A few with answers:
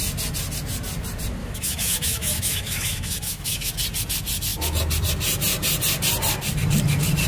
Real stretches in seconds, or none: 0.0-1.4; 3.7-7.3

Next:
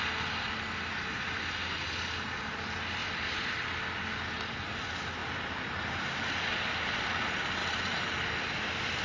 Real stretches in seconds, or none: 0.0-3.0; 3.6-5.2; 7.1-7.6

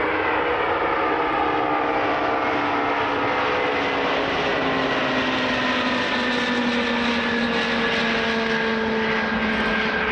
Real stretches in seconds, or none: 0.0-10.1

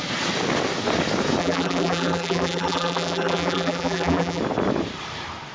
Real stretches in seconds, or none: 0.0-1.4; 4.4-5.5